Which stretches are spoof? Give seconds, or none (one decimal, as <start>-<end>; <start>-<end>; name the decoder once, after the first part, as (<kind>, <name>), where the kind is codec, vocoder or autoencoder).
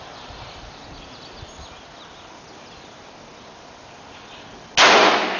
none